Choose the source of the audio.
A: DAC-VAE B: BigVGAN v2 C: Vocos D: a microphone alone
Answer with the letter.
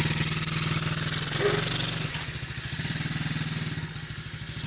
D